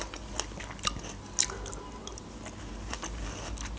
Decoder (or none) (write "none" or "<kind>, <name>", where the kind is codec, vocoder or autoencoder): none